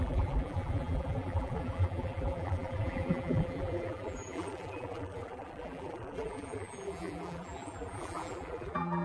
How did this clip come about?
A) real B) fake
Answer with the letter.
B